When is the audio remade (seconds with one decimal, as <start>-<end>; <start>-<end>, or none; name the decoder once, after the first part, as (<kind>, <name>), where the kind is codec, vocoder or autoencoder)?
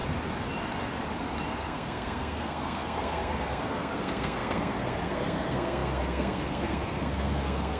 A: 1.5-7.8 (codec, SNAC)